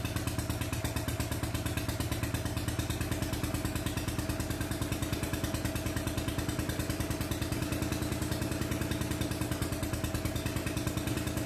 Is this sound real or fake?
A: real